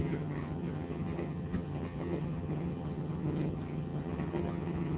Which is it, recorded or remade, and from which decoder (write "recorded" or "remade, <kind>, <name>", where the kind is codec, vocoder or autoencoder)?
remade, vocoder, HiFi-GAN